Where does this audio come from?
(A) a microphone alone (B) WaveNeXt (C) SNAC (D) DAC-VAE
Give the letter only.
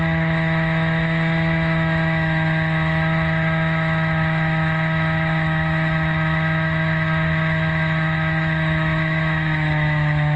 D